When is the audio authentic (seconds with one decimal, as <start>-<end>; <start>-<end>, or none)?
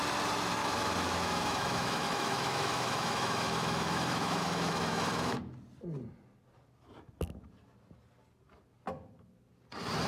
0.0-0.6; 5.4-10.1